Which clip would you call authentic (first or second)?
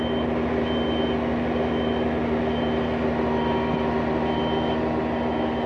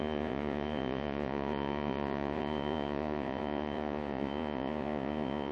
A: first